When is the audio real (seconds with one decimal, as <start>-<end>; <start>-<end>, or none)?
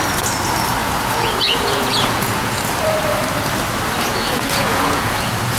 0.0-0.8; 2.6-4.1